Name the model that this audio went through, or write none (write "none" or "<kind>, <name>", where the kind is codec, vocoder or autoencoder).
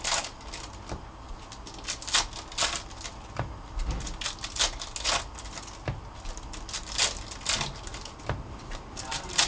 none